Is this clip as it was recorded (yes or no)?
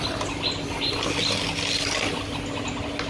yes